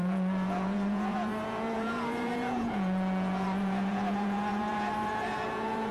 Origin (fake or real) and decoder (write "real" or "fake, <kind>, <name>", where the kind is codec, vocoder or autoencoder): fake, vocoder, Vocos